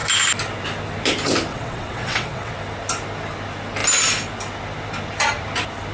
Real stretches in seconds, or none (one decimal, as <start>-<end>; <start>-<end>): 0.0-1.5; 2.5-5.9